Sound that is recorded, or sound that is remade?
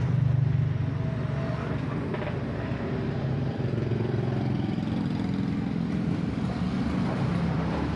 recorded